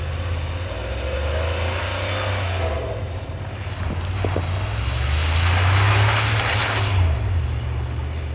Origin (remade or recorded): recorded